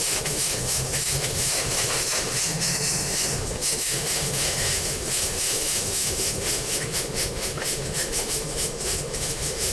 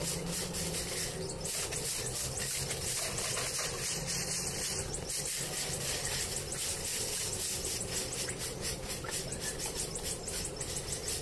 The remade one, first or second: first